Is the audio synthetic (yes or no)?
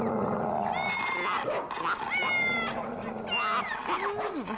no